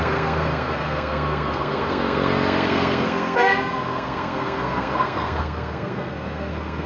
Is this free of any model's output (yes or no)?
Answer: no